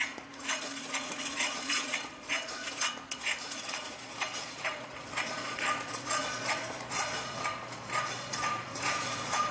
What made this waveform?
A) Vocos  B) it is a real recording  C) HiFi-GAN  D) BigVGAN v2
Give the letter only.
A